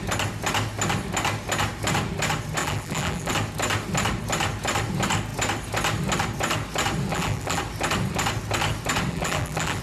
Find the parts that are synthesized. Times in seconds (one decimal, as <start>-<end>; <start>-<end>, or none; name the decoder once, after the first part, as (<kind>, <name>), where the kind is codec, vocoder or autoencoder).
2.6-3.3 (vocoder, BigVGAN v2); 7.1-7.6; 9.1-9.8